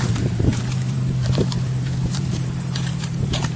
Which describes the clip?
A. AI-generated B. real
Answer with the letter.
A